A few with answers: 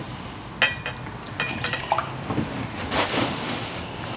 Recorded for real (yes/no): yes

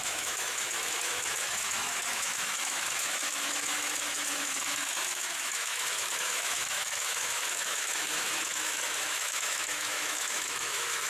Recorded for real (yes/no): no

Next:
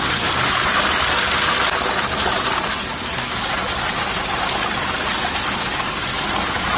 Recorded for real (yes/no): yes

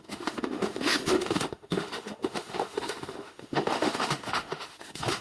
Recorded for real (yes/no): no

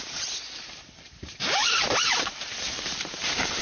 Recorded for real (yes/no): no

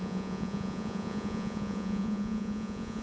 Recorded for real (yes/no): no